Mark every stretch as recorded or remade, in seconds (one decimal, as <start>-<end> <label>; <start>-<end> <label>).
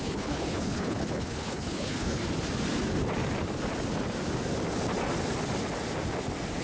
0.0-2.2 remade; 2.2-6.6 recorded